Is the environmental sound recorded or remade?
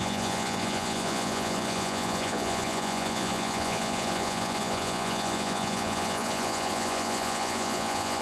remade